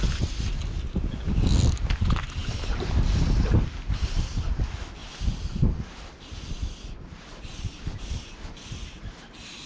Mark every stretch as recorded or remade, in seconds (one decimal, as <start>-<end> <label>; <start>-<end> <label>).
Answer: 0.0-2.4 recorded; 2.4-3.5 remade; 3.5-9.7 recorded